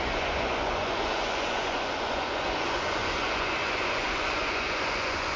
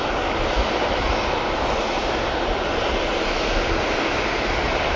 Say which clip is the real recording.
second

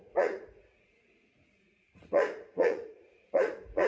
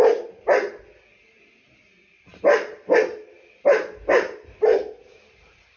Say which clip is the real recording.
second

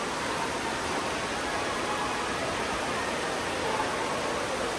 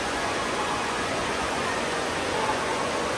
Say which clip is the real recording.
first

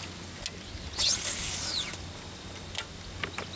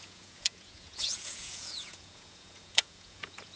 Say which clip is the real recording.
first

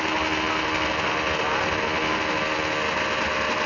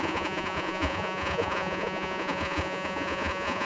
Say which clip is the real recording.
first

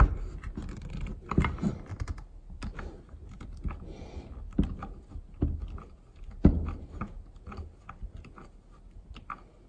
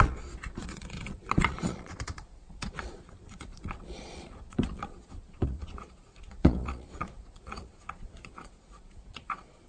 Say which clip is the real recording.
first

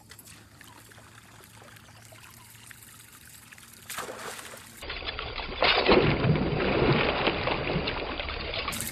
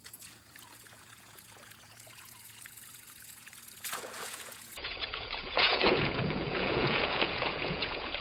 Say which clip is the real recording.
first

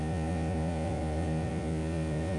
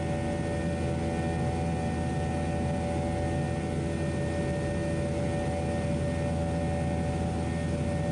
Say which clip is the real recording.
second